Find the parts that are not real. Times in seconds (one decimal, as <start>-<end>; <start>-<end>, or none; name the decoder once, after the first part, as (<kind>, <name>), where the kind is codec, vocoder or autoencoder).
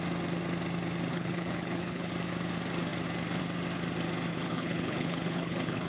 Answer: 1.1-2.1 (codec, HILCodec); 4.3-5.9